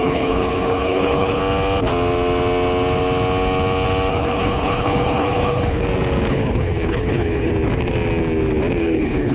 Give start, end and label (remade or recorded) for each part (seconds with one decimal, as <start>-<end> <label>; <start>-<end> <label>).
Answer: 0.0-1.4 remade; 1.4-4.1 recorded; 4.1-5.8 remade; 5.8-6.3 recorded; 6.3-7.5 remade; 7.5-8.8 recorded; 8.8-9.3 remade